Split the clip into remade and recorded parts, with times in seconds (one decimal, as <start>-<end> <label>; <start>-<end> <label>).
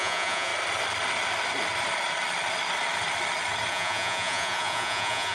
0.0-0.5 remade; 0.5-3.7 recorded; 3.7-5.3 remade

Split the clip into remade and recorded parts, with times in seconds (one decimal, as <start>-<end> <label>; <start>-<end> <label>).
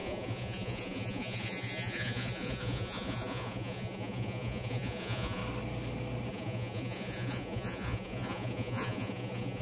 0.0-5.4 remade; 5.4-6.3 recorded; 6.3-9.6 remade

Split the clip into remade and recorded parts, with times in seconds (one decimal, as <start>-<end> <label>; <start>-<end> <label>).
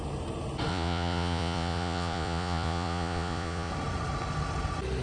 0.0-0.7 recorded; 0.7-3.7 remade; 3.7-5.0 recorded